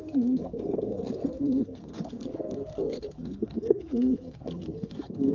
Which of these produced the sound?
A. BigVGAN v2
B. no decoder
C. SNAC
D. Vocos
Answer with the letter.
C